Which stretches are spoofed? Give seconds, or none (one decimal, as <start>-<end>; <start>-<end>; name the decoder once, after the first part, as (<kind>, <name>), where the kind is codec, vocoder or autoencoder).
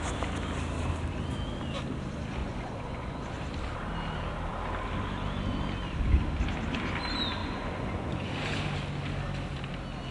2.4-3.2 (vocoder, Vocos); 7.4-8.3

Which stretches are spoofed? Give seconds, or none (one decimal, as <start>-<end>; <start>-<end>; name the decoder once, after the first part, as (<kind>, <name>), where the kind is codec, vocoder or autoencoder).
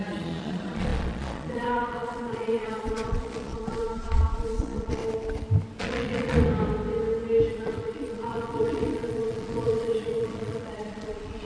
0.0-5.0 (vocoder, Vocos); 5.8-6.5; 7.5-11.5